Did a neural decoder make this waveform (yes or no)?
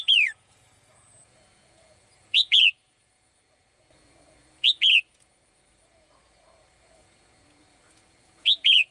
yes